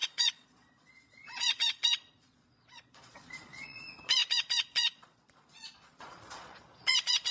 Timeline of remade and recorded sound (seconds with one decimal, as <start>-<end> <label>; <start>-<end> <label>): 0.0-7.3 remade